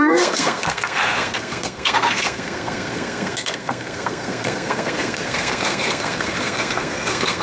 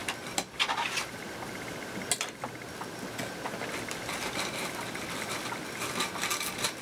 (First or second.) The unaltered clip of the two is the second